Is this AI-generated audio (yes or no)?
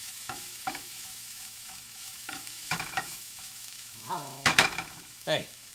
yes